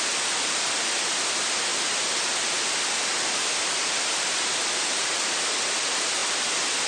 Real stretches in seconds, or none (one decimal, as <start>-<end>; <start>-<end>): 0.0-6.9